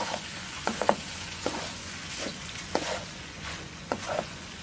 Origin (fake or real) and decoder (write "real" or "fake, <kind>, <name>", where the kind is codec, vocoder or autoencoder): fake, vocoder, Vocos